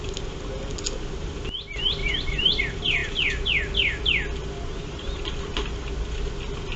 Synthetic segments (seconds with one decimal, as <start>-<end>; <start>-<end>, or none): 2.0-2.6